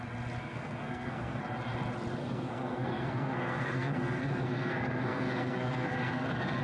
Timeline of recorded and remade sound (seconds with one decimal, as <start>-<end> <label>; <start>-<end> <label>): 0.0-0.4 recorded; 0.4-1.4 remade; 1.4-2.2 recorded; 2.2-6.6 remade

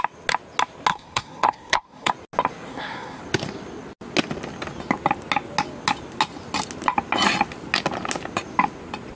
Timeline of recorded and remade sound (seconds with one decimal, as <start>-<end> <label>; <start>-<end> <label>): 0.0-0.9 recorded; 0.9-2.1 remade; 2.1-2.7 recorded; 2.7-3.2 remade; 3.2-9.2 recorded

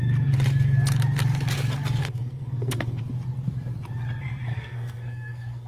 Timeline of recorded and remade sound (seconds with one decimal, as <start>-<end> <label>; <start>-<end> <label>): 0.0-2.0 recorded; 2.0-3.0 remade; 3.0-4.5 recorded; 4.5-5.7 remade